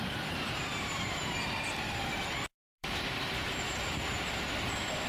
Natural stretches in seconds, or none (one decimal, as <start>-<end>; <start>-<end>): 0.0-2.5; 3.0-5.1